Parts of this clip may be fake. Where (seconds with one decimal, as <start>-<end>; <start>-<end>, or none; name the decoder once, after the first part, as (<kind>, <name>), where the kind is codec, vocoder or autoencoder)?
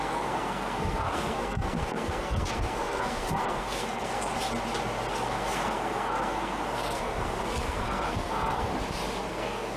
0.0-4.3 (codec, SNAC); 5.1-8.7; 9.3-9.8